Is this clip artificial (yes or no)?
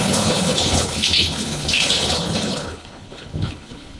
yes